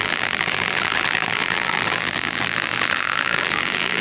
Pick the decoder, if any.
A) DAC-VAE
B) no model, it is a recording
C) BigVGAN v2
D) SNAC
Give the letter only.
C